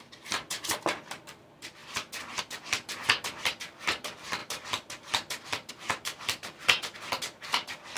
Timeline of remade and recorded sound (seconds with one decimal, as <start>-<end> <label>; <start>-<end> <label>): 0.0-1.8 remade; 1.8-2.4 recorded; 2.4-8.0 remade